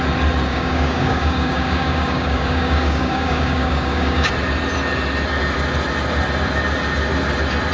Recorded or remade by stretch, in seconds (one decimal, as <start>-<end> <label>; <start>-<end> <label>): 0.0-0.5 recorded; 0.5-4.3 remade; 4.3-7.7 recorded